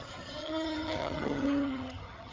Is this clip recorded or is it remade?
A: remade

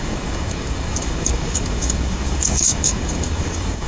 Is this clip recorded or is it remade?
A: remade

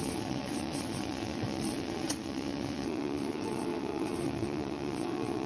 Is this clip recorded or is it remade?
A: remade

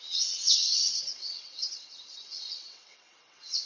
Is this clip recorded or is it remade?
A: remade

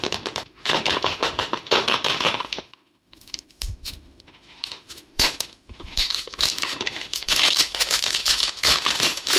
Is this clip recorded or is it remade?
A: remade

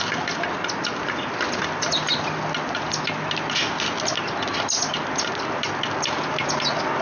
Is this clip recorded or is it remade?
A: recorded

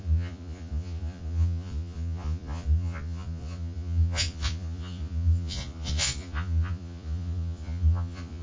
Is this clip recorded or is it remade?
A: remade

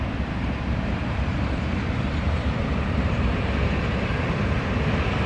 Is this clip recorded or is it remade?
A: remade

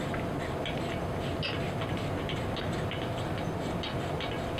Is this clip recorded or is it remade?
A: recorded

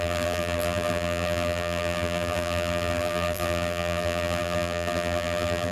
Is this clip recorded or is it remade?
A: remade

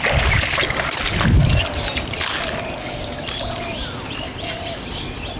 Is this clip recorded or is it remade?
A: recorded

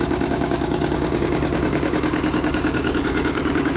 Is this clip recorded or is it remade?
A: remade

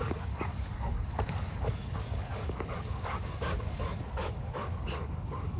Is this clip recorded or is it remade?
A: remade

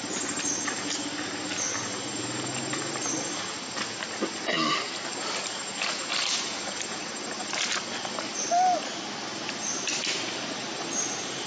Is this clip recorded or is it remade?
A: recorded